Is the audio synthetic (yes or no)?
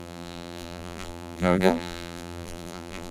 yes